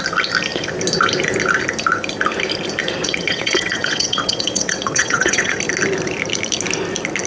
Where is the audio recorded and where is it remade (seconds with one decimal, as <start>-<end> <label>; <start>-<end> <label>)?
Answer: 0.0-2.8 recorded; 2.8-5.6 remade; 5.6-7.3 recorded